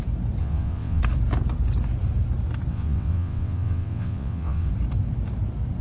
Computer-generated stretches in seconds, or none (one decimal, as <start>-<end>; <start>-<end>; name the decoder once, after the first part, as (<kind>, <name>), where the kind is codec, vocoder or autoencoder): 0.4-1.0 (vocoder, WaveNeXt); 2.7-4.7